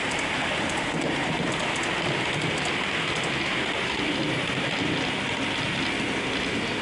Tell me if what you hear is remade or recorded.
recorded